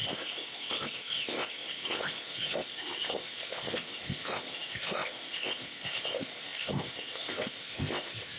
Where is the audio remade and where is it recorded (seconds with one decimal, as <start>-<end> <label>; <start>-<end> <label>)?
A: 0.0-8.4 remade